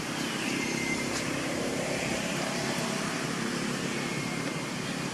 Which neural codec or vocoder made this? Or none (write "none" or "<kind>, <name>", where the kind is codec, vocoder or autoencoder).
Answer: vocoder, BigVGAN v2